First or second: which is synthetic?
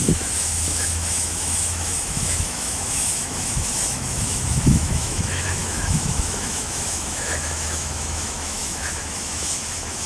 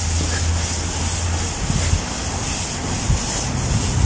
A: first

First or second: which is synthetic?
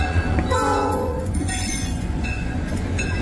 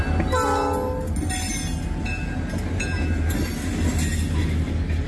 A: first